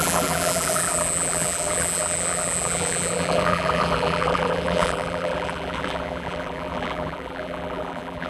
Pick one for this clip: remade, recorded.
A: remade